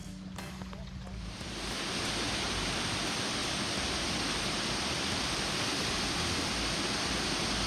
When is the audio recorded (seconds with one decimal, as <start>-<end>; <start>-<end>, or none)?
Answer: 0.0-3.4; 4.0-7.7